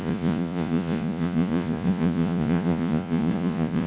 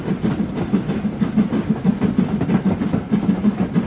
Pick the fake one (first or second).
first